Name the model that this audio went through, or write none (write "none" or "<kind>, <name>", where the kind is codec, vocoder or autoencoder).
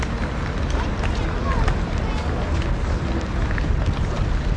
none